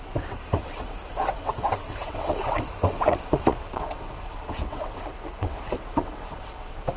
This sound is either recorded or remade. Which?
remade